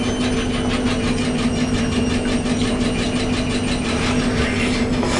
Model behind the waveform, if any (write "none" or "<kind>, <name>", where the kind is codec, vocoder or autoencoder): none